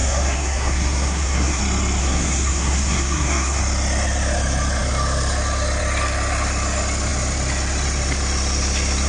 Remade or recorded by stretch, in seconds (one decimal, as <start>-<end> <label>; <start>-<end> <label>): 0.0-1.6 remade; 1.6-2.0 recorded; 2.0-3.6 remade; 3.6-9.1 recorded